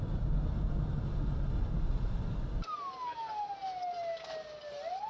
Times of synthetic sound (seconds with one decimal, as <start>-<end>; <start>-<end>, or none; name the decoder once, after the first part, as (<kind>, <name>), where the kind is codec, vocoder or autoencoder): none